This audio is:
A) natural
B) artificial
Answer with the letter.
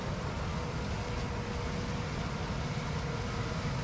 A